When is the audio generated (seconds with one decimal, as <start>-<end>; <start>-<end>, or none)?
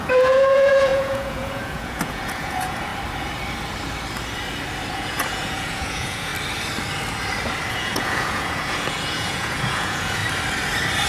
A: 0.0-2.9; 4.9-6.3; 7.7-10.2